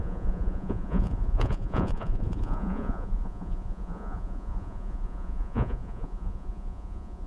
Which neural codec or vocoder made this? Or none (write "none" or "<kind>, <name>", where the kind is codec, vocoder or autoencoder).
vocoder, Vocos